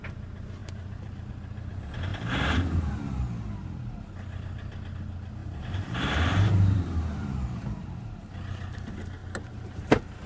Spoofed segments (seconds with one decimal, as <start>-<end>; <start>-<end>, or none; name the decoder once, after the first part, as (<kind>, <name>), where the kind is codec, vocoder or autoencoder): 0.6-1.3 (vocoder, BigVGAN v2); 2.1-3.0; 5.4-8.2